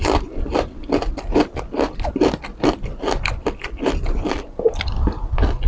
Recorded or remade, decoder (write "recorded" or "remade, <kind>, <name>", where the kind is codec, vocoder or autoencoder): recorded